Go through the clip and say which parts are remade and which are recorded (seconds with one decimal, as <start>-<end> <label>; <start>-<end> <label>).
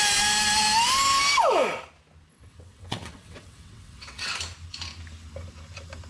0.0-2.3 recorded; 2.3-4.3 remade; 4.3-6.1 recorded